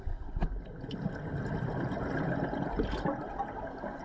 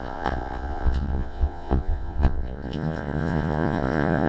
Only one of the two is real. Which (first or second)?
first